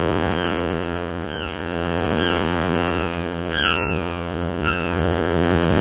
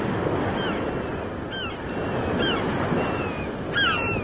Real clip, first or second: second